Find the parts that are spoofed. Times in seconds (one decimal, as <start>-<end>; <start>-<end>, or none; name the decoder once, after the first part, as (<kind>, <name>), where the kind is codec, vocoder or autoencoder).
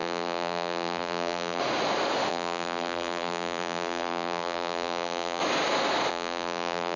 0.0-1.6 (vocoder, BigVGAN v2); 2.3-5.4; 6.1-7.0